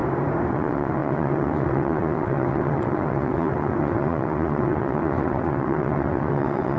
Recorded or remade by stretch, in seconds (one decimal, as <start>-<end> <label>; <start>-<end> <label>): 0.0-0.5 recorded; 0.5-6.8 remade

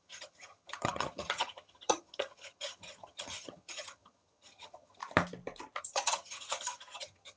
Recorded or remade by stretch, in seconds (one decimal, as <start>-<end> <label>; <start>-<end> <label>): 0.0-5.0 remade; 5.0-5.8 recorded; 5.8-7.4 remade

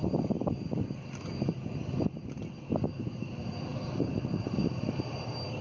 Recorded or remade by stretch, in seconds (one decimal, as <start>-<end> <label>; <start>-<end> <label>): 0.0-5.6 recorded

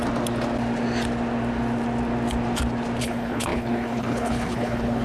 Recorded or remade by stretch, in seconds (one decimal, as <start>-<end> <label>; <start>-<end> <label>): 0.0-3.0 recorded; 3.0-5.0 remade